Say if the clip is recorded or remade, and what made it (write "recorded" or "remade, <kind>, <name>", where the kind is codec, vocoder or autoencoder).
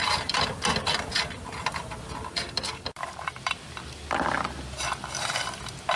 recorded